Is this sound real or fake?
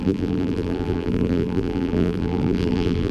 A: fake